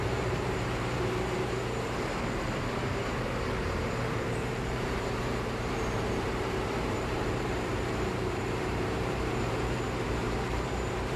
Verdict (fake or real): fake